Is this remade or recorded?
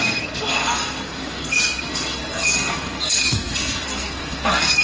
remade